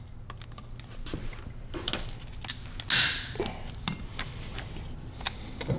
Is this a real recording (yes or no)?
yes